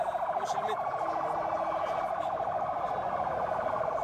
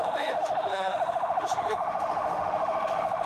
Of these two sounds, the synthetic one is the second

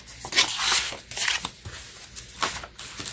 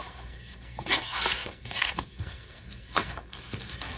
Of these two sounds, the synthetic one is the second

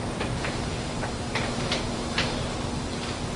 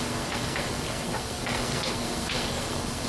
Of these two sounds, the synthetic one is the second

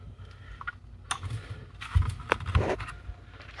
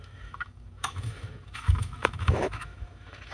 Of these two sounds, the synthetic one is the second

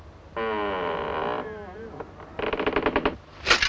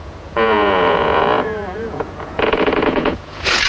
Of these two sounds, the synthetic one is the second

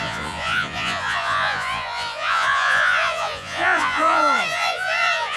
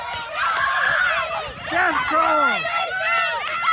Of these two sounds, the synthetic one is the first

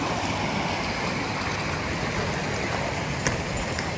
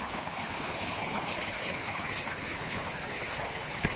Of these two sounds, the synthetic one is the second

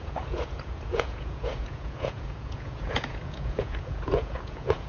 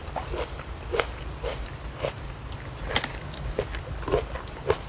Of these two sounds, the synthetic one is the first